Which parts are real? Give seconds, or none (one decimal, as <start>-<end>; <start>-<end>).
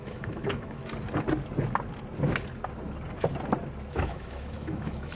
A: 0.8-3.9